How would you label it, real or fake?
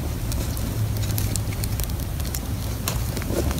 real